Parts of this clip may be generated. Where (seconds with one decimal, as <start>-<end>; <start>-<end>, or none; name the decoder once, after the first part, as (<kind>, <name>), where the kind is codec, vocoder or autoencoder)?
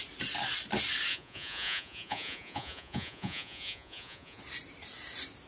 1.1-4.4 (vocoder, Vocos)